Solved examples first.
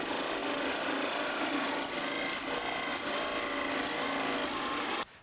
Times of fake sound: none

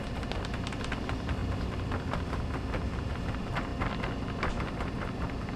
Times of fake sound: none

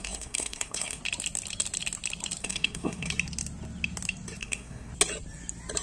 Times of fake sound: 0.0-1.0 (codec, SNAC); 2.4-3.1; 4.4-4.9

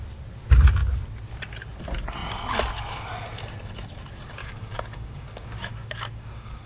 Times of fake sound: 4.4-6.7 (codec, DAC)

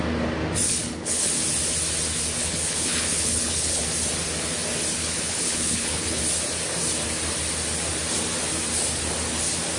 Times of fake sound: 0.6-1.3 (codec, HILCodec); 2.4-3.8; 5.0-6.2